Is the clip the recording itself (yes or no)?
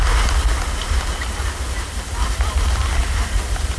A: yes